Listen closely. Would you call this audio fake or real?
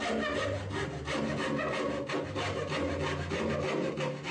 real